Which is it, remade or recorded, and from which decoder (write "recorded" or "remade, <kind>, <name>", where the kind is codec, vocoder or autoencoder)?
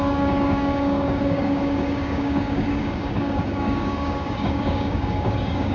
remade, codec, DAC